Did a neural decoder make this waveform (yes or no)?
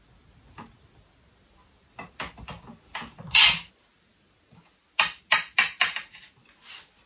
no